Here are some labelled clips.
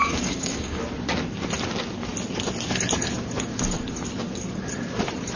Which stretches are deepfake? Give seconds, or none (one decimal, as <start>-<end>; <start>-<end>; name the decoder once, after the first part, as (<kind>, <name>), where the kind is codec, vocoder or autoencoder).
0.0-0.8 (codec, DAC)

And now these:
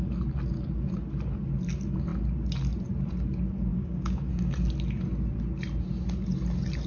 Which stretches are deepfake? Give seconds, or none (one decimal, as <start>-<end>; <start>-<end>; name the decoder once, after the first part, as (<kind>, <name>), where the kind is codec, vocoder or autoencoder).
3.7-4.3 (codec, DAC)

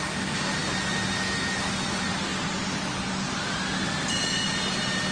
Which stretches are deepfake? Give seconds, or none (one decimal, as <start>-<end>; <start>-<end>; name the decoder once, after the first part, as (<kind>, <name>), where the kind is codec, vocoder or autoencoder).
none

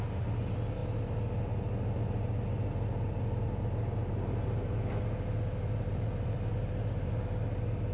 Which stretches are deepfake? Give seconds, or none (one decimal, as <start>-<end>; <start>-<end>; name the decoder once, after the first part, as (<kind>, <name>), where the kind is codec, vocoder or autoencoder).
none

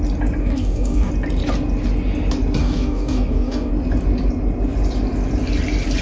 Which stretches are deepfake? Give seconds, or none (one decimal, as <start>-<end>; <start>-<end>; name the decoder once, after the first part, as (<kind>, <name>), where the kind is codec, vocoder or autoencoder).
0.4-1.1 (codec, DAC); 2.6-3.7